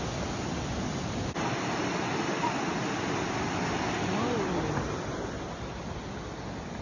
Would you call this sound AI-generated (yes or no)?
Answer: no